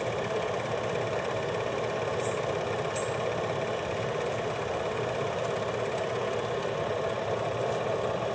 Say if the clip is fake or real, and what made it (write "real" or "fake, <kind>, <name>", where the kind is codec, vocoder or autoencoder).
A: real